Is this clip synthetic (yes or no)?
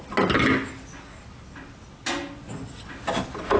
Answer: no